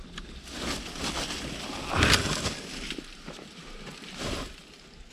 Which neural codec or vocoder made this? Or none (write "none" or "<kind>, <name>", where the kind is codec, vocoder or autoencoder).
none